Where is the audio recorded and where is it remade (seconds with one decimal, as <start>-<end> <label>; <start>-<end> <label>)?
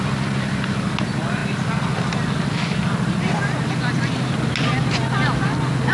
0.0-5.9 recorded